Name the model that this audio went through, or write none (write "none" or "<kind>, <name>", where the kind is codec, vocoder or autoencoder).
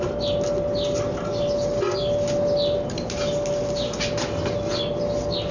none